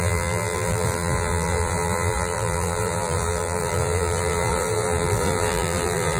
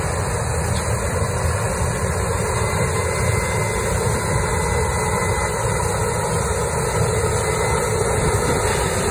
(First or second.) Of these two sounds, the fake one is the first